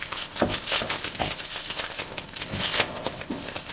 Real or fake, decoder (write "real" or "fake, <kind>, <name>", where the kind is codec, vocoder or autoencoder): fake, codec, ZipCodec